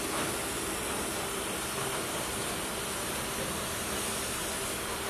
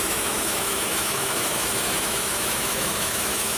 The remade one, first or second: second